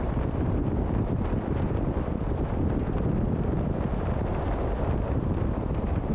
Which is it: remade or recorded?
remade